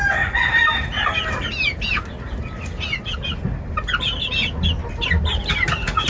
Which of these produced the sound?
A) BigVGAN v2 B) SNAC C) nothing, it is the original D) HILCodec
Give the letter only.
C